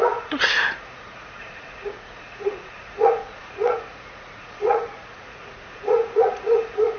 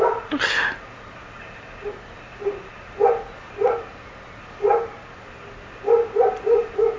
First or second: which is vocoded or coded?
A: first